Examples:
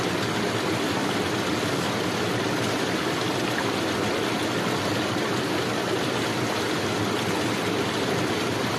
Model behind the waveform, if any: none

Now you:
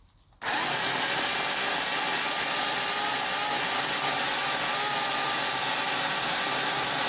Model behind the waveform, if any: none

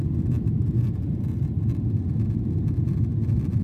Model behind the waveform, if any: none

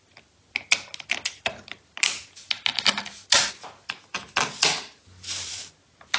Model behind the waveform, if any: none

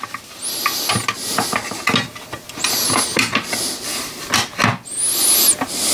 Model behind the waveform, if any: none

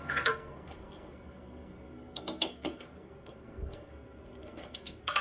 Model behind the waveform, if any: codec, SNAC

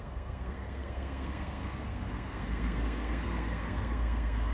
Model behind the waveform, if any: codec, SNAC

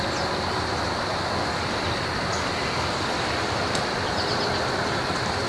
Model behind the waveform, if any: none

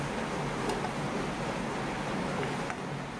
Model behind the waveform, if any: none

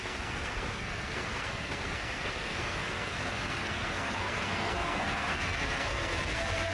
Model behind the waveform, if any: codec, SNAC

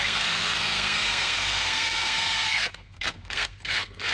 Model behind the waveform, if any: codec, SNAC